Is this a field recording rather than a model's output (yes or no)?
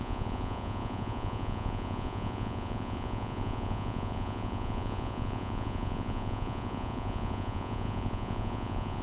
no